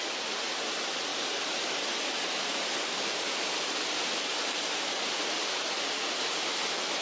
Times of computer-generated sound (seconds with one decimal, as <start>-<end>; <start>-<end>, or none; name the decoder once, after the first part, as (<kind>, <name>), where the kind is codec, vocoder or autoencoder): 1.1-5.3 (vocoder, BigVGAN v2)